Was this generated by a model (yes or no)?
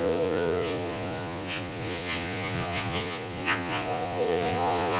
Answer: yes